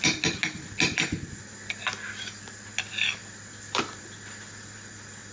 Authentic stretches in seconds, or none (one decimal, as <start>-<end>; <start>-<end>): 0.0-5.3